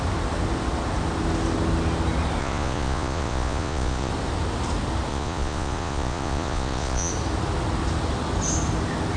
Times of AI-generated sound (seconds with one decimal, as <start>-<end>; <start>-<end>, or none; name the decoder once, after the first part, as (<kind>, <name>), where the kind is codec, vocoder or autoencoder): 2.4-4.1 (vocoder, Vocos); 5.1-7.1